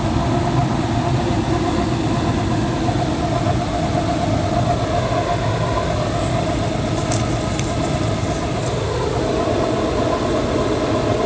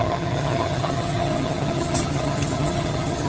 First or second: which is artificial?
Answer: second